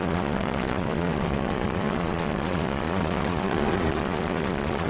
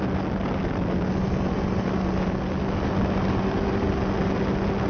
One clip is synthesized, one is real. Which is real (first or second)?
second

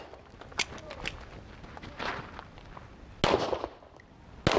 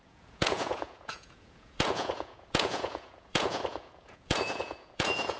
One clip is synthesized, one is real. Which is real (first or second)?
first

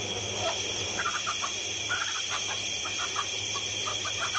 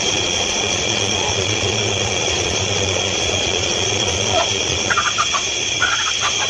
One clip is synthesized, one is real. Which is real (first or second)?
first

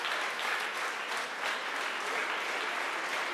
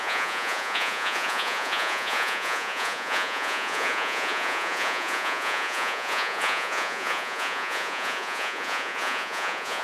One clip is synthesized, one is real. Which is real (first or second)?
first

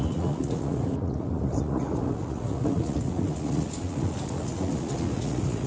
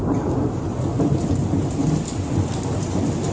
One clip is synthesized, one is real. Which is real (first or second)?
second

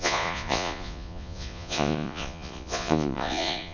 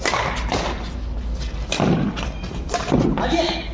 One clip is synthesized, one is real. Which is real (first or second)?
second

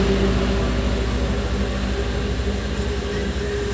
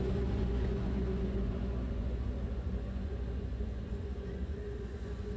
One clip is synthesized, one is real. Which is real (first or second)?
first